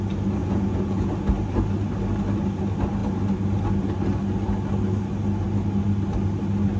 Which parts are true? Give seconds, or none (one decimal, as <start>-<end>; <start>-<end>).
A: 0.0-0.4; 1.1-6.8

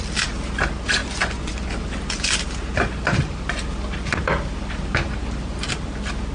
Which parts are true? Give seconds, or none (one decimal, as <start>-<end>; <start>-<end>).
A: 0.0-1.0; 1.8-6.3

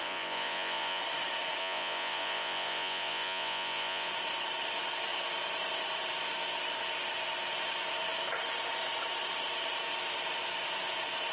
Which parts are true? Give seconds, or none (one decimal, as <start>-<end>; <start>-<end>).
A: 1.0-1.6; 4.1-11.3

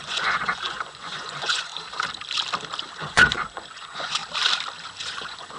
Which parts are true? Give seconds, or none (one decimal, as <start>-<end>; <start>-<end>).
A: 1.7-2.9; 4.2-5.0

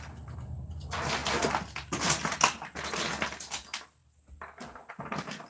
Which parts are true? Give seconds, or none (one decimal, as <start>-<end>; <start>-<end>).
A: 0.0-5.5